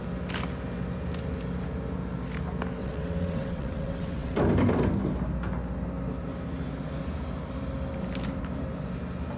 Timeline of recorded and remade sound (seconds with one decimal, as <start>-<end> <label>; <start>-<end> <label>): 0.0-2.8 recorded; 2.8-4.4 remade; 4.4-9.4 recorded